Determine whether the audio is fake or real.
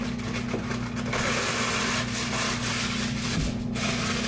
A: real